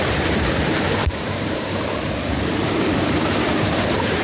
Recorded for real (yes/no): no